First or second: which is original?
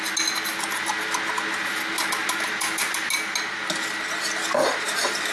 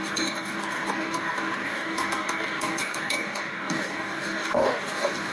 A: first